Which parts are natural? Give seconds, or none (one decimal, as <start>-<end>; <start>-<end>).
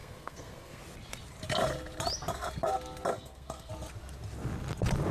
0.8-3.1; 3.7-5.1